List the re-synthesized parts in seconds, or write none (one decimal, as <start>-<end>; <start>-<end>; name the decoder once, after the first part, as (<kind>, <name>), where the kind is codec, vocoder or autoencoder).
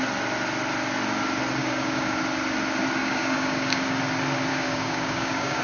1.6-2.2 (codec, DAC); 3.0-4.0; 4.5-5.6